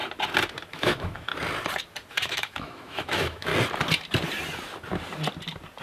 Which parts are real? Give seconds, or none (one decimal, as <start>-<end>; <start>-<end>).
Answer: 0.0-0.7; 1.3-2.1; 3.5-5.8